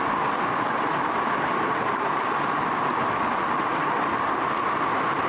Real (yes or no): yes